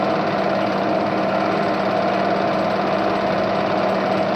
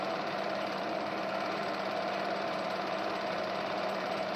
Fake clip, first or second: second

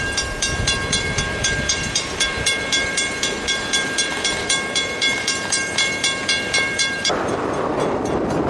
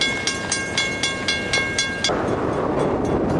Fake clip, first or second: first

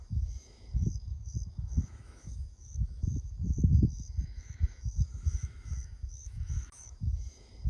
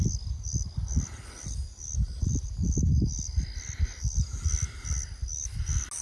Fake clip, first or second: first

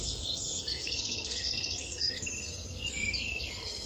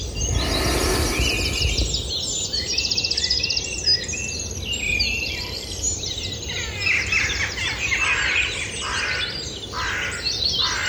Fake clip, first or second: first